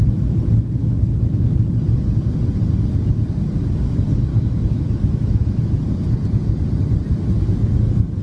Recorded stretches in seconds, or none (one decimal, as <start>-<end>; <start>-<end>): 0.0-0.8; 1.6-4.3; 5.6-8.2